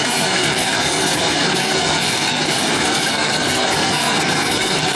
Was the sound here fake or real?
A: fake